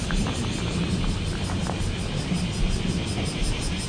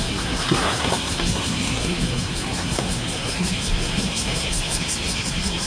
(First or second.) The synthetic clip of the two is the second